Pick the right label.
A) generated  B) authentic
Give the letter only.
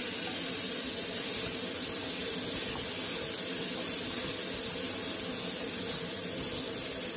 B